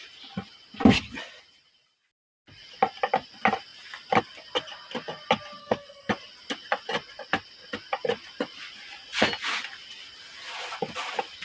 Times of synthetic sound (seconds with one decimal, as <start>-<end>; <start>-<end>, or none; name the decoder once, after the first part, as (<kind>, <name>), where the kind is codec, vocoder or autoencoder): 5.6-6.1 (codec, SNAC)